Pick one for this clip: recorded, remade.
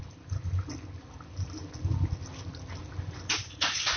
recorded